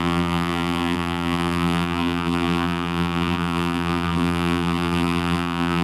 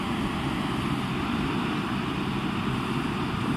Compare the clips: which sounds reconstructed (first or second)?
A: first